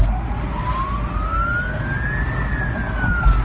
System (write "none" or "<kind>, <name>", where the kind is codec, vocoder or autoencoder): none